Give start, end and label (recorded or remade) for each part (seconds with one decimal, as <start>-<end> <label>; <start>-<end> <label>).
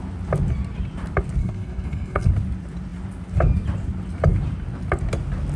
0.0-1.4 recorded; 1.4-2.3 remade; 2.3-5.6 recorded